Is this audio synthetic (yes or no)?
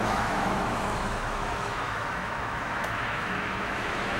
yes